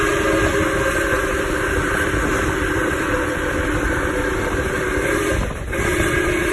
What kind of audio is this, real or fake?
real